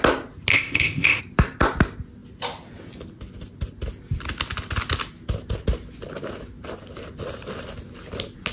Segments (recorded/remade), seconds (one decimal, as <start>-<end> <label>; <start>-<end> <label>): 0.0-0.5 recorded; 0.5-1.2 remade; 1.2-8.5 recorded